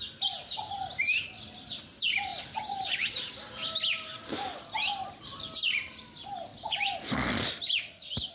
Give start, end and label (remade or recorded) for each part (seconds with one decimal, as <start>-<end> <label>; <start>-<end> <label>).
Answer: 0.0-8.3 recorded